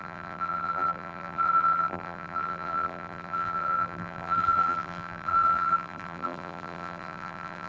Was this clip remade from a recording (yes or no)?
yes